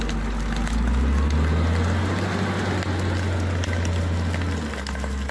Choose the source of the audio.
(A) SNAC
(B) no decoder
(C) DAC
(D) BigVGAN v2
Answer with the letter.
B